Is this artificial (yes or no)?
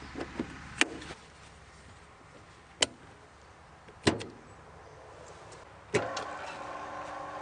no